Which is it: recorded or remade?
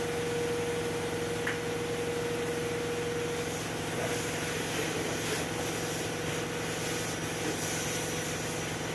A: recorded